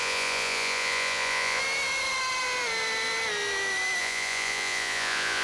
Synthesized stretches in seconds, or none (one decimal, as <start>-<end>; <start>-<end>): 0.0-1.6; 4.0-5.4